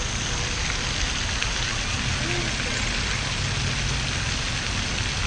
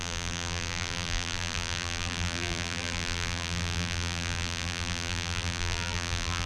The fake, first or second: second